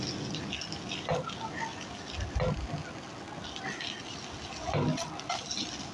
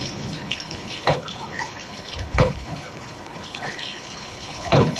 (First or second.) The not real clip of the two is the second